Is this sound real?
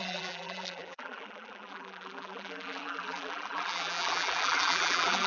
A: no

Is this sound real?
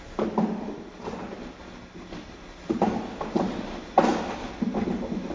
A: yes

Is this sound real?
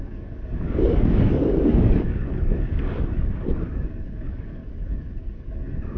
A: no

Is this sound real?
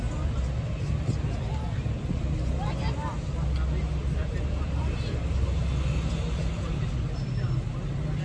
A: yes